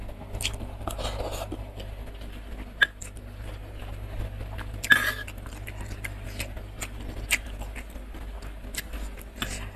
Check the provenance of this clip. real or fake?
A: real